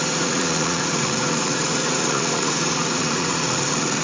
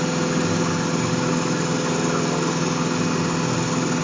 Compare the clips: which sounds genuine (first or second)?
second